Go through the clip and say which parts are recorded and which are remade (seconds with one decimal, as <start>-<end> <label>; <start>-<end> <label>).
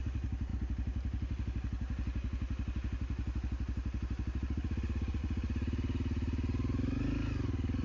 0.0-7.8 recorded